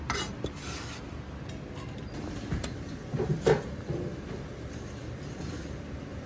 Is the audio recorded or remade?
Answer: recorded